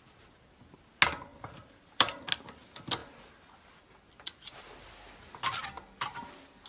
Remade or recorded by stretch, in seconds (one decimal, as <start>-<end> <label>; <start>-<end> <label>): 0.0-1.3 recorded; 1.3-2.2 remade; 2.2-6.7 recorded